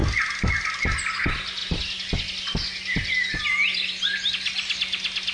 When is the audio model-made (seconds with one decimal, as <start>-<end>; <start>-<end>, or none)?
none